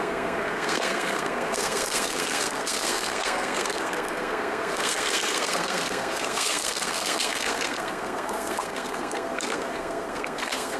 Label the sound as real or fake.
fake